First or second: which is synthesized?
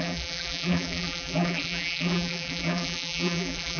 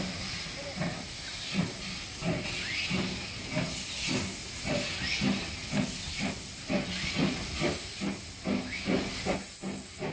first